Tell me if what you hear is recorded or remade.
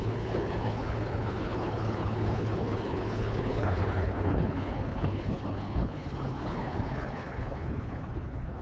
remade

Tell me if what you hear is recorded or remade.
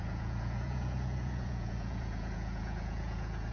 remade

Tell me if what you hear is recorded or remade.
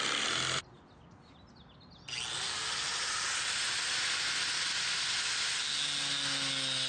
recorded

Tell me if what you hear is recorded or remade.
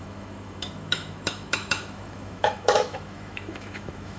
remade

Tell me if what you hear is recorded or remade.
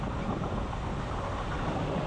recorded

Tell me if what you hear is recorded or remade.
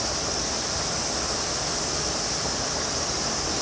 recorded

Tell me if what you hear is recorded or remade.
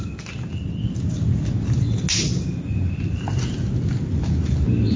recorded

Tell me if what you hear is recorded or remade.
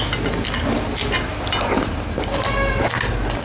recorded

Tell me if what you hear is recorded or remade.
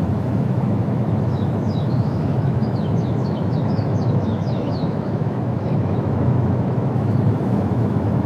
remade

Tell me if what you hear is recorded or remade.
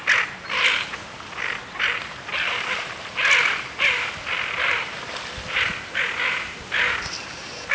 recorded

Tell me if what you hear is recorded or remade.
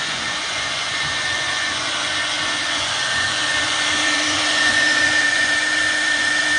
remade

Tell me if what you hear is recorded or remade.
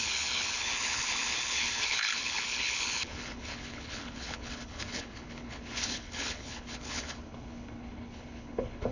remade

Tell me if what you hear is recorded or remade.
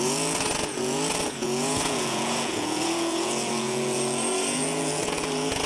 remade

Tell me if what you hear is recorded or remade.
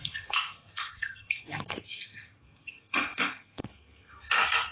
remade